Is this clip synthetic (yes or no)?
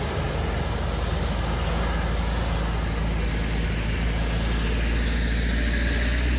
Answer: no